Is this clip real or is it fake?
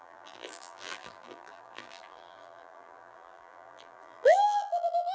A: fake